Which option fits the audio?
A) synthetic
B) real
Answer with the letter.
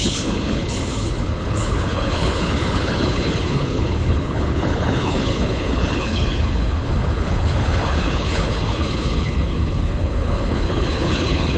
A